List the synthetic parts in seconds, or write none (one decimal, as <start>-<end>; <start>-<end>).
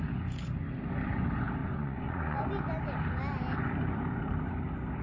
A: 1.6-2.5